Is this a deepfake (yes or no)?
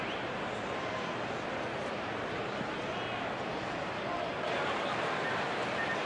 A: no